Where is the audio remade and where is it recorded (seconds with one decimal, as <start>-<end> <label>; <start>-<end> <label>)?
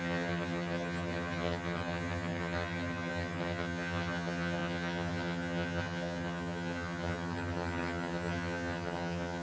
0.0-9.4 remade